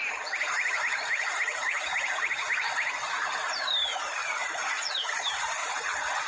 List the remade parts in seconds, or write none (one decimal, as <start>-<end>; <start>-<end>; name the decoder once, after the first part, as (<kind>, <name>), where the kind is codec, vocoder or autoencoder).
4.2-4.9 (vocoder, Vocos); 5.6-6.3